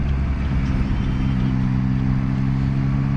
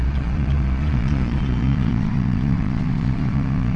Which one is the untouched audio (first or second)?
first